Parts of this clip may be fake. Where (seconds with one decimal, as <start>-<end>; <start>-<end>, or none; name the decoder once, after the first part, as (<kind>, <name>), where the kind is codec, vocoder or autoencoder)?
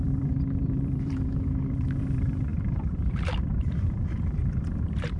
0.0-2.5 (vocoder, BigVGAN v2); 3.6-5.2